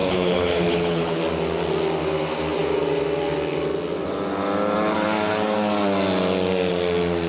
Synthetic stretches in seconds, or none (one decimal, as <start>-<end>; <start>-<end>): 0.0-1.2